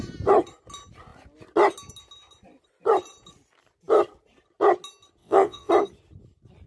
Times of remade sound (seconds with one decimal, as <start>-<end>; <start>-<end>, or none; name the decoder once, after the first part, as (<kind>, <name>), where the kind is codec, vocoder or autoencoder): 5.2-5.7 (vocoder, WaveNeXt)